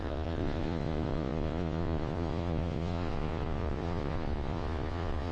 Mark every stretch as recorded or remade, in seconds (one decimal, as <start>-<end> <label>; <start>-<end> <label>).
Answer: 0.0-5.3 remade